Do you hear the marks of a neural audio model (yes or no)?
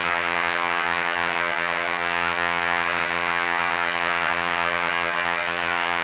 yes